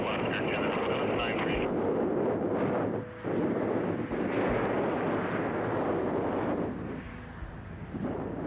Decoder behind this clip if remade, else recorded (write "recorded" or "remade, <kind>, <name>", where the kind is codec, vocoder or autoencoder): recorded